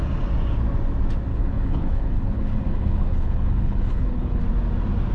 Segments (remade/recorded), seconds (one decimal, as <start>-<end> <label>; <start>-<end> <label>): 0.0-1.3 recorded; 1.3-4.4 remade; 4.4-5.1 recorded